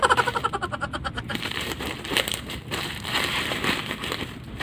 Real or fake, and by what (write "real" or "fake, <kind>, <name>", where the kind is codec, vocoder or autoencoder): fake, vocoder, BigVGAN v2